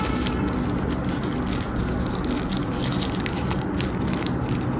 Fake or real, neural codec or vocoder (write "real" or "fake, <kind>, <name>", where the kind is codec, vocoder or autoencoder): real